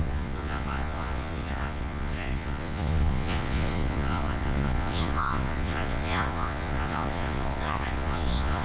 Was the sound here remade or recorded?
remade